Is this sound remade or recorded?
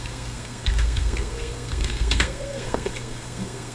remade